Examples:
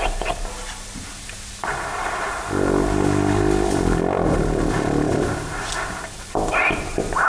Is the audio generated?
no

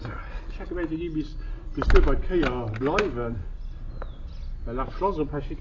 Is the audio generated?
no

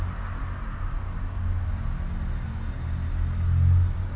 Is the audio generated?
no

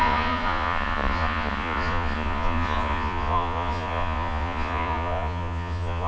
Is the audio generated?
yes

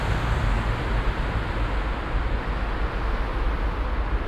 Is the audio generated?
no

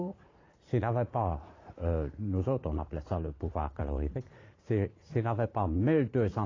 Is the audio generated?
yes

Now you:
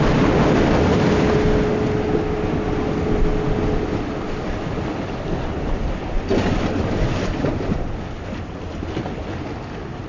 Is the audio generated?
no